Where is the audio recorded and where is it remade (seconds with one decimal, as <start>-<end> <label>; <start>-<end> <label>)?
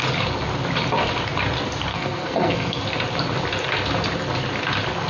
0.0-1.9 recorded; 1.9-2.8 remade; 2.8-5.1 recorded